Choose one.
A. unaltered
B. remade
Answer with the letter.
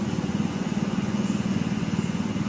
B